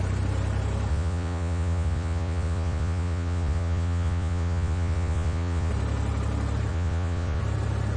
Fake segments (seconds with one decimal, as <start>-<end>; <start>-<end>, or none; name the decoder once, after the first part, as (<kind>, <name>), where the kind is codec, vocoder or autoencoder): 0.9-5.7 (vocoder, Vocos); 6.7-7.4